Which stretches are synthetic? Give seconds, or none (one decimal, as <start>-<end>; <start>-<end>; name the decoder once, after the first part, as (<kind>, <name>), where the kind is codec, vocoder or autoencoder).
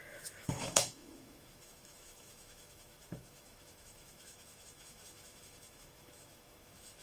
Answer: 0.0-7.0 (autoencoder, DAC-VAE)